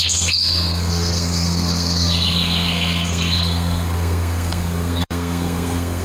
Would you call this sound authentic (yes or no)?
no